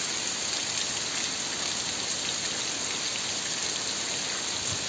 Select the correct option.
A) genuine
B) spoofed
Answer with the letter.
A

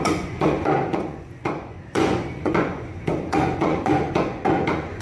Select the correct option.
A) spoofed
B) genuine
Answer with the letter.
A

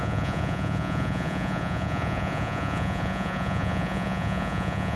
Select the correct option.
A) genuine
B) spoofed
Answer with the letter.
B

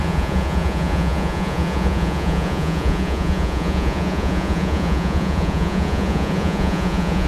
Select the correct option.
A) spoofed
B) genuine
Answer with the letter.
A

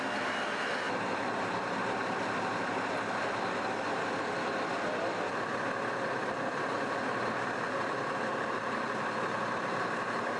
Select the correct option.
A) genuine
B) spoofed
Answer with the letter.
A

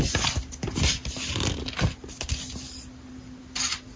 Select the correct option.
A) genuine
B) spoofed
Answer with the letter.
A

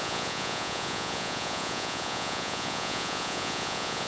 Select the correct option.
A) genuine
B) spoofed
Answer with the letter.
B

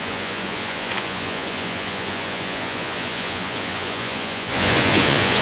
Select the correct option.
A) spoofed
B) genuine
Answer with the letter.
A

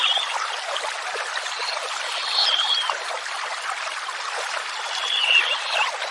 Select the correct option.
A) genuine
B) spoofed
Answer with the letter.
A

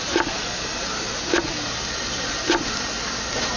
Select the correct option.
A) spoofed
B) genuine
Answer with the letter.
B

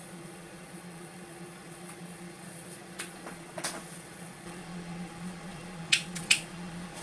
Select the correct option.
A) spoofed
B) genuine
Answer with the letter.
A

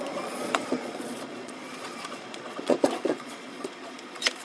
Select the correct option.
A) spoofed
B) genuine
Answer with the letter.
A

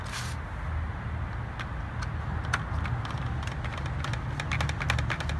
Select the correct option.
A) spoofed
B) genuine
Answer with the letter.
B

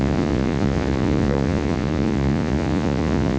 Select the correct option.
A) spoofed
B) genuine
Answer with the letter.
A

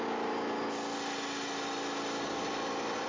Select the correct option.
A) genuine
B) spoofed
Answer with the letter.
A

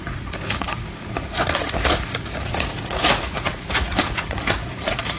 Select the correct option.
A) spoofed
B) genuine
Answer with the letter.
A